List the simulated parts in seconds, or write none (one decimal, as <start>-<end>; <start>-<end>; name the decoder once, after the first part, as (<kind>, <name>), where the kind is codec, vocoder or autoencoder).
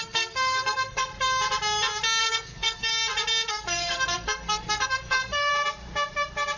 0.0-1.1 (codec, SNAC); 2.2-2.9; 3.5-5.5